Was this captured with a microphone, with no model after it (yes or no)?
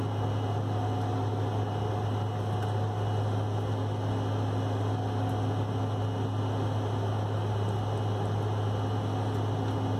yes